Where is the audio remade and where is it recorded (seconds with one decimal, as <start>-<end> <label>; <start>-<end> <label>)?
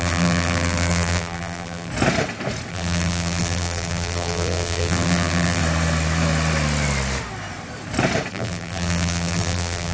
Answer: 0.0-1.9 remade; 1.9-2.7 recorded; 2.7-5.6 remade; 5.6-8.3 recorded; 8.3-9.9 remade